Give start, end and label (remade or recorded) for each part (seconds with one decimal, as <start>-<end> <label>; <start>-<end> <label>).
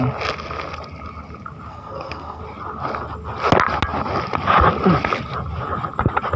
0.0-1.7 recorded; 1.7-2.4 remade; 2.4-6.4 recorded